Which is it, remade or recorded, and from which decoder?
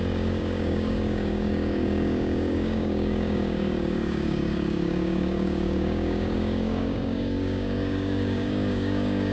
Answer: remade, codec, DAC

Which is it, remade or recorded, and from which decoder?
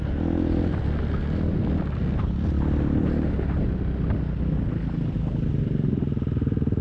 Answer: recorded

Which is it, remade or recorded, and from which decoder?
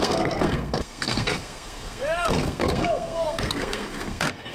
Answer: remade, codec, SNAC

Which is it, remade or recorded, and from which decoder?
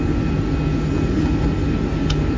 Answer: recorded